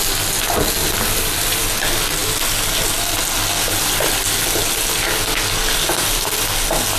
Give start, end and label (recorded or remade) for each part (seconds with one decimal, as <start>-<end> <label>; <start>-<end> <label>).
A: 0.0-0.8 recorded; 0.8-1.6 remade; 1.6-7.0 recorded